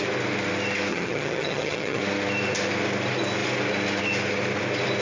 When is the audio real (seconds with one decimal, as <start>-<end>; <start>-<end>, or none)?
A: 0.0-0.9; 2.0-5.0